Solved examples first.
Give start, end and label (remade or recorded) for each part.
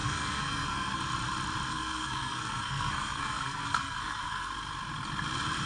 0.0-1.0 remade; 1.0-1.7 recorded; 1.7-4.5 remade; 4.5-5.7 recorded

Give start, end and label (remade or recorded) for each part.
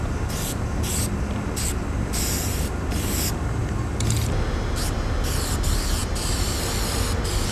0.0-7.5 recorded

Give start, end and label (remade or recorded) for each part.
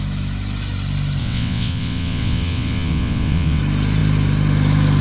0.0-1.2 recorded; 1.2-3.6 remade; 3.6-5.0 recorded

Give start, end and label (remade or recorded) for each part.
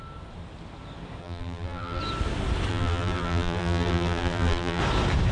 0.0-1.2 recorded; 1.2-2.0 remade; 2.0-2.7 recorded; 2.7-4.8 remade; 4.8-5.3 recorded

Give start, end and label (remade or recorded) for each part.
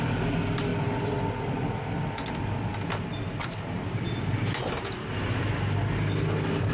0.0-6.7 recorded